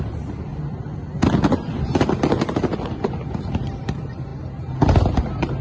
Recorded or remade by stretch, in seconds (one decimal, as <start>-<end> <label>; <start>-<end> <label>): 0.0-0.5 remade; 0.5-3.5 recorded; 3.5-4.3 remade; 4.3-5.0 recorded; 5.0-5.6 remade